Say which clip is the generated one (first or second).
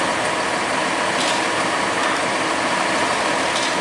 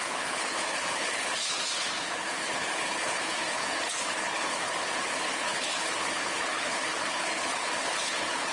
second